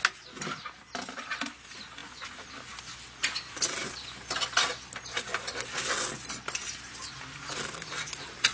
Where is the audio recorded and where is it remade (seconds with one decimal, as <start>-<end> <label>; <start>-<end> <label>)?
0.0-8.5 recorded